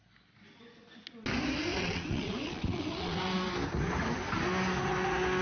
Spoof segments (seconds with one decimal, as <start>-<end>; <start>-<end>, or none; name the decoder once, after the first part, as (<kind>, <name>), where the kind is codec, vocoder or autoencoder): 1.8-3.3 (vocoder, WaveNeXt)